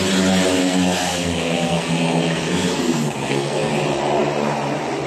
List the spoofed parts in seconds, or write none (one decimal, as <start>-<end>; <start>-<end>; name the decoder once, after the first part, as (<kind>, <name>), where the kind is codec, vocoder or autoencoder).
0.6-3.7 (codec, SNAC)